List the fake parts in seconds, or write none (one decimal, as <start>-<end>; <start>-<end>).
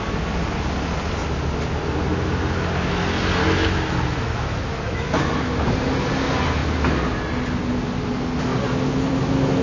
3.4-5.7